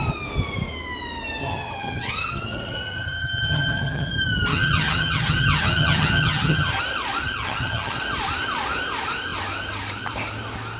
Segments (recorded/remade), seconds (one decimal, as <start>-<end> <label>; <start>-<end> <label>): 0.0-1.4 recorded; 1.4-4.1 remade; 4.1-4.5 recorded; 4.5-6.8 remade; 6.8-7.2 recorded; 7.2-8.0 remade; 8.0-10.8 recorded